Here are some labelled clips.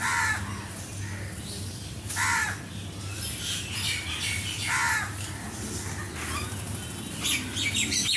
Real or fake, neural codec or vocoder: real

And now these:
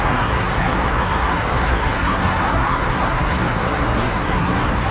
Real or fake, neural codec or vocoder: fake, codec, SNAC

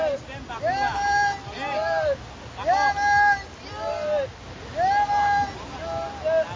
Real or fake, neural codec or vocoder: real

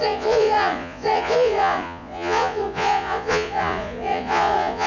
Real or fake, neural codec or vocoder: fake, vocoder, Vocos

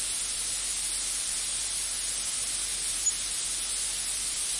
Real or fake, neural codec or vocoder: real